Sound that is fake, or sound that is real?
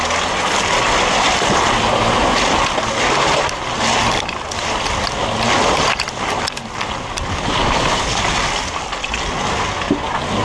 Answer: real